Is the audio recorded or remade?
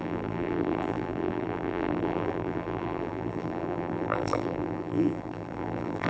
remade